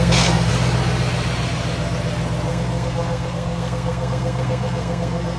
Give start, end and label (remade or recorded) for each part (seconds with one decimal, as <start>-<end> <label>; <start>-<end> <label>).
0.0-0.5 remade; 0.5-2.5 recorded; 2.5-5.4 remade